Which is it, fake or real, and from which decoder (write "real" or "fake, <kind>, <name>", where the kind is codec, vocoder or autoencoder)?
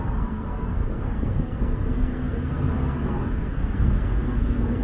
fake, codec, SNAC